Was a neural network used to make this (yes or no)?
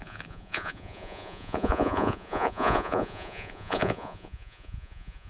yes